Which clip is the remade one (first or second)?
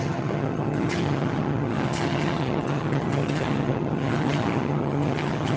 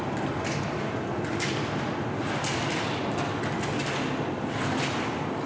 first